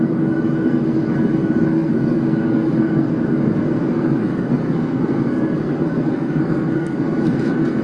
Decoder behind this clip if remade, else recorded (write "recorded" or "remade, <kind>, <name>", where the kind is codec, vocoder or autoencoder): remade, codec, SNAC